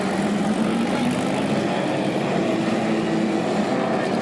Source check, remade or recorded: recorded